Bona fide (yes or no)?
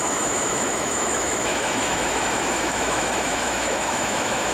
no